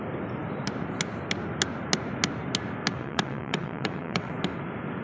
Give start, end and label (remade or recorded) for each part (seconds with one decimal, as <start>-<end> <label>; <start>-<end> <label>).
0.0-2.9 recorded; 2.9-4.3 remade; 4.3-5.0 recorded